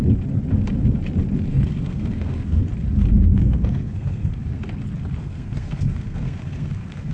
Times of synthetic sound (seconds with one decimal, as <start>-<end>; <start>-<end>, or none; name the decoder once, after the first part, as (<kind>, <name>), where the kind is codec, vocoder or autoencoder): 1.5-2.6 (codec, SNAC); 3.3-4.6; 5.2-7.1